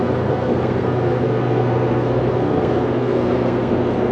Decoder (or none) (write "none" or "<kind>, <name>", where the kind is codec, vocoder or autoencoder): codec, SNAC